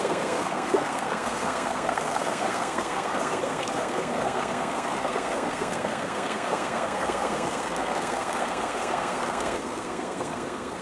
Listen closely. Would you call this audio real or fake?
fake